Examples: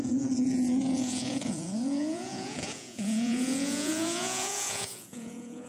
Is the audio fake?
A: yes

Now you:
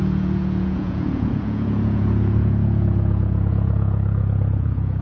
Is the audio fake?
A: yes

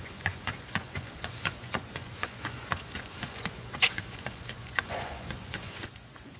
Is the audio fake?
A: yes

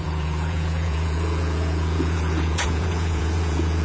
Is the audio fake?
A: yes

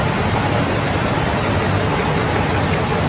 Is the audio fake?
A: no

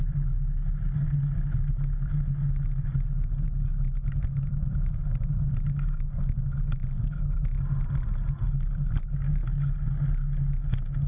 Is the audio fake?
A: no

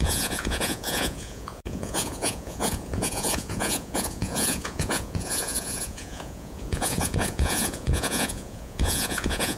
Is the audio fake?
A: yes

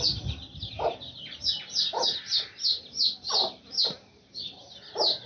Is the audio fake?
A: no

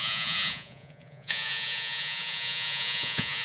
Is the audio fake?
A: yes